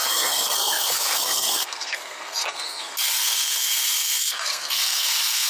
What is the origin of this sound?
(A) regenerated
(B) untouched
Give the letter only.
A